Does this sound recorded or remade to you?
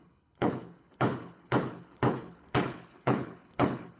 remade